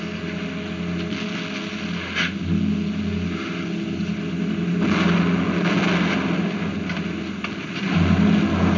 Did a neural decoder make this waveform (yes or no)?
no